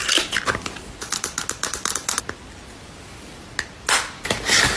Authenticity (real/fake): real